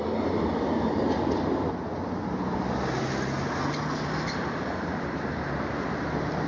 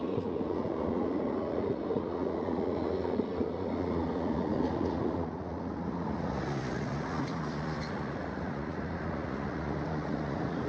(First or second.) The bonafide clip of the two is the first